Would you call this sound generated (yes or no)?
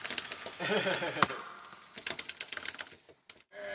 no